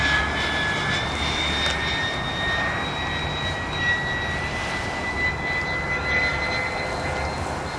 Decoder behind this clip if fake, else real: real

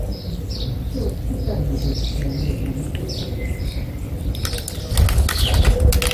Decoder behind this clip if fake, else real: real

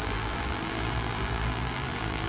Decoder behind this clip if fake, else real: fake, vocoder, BigVGAN v2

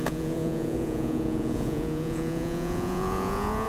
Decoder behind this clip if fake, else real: fake, vocoder, Vocos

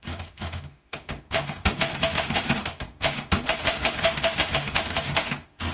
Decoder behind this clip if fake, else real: fake, autoencoder, DAC-VAE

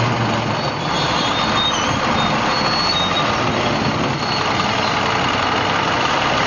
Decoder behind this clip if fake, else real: real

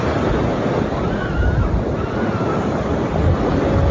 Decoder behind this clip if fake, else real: real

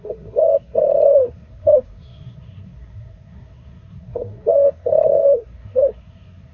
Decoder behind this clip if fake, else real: fake, codec, SNAC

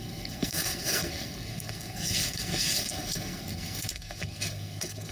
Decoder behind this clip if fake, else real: fake, codec, SNAC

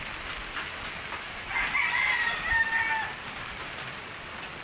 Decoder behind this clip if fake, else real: real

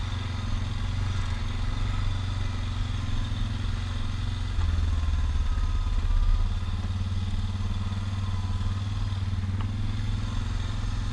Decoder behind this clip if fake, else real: real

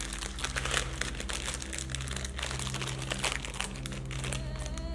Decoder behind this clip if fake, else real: real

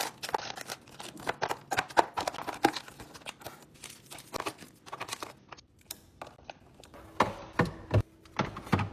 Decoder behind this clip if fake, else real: real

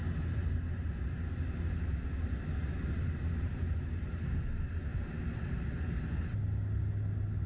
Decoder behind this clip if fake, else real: real